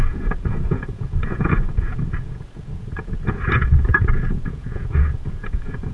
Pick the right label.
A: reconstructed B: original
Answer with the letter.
A